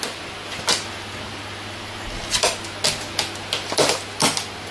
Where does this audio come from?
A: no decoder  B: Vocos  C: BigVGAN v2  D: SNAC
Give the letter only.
A